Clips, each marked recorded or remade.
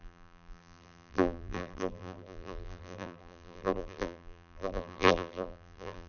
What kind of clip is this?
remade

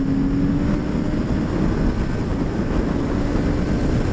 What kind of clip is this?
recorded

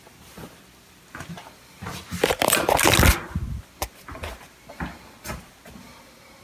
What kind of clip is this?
recorded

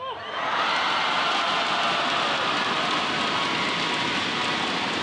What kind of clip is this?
recorded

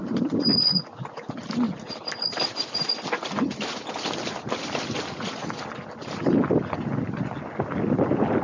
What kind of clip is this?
recorded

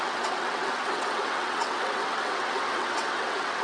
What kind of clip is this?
remade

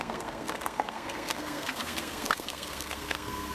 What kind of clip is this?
remade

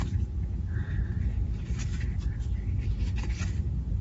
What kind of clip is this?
recorded